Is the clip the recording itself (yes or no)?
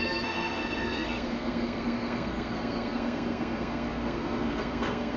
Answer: no